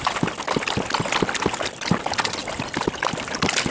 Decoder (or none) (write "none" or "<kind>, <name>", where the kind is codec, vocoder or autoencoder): none